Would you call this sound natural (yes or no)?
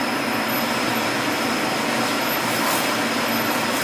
yes